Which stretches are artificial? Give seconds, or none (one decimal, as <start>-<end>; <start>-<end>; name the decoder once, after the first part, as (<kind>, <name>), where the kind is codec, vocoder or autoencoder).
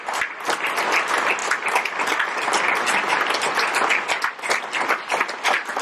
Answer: none